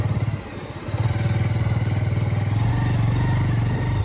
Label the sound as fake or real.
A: real